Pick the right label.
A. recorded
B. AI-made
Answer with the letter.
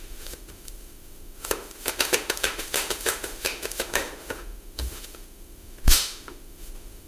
B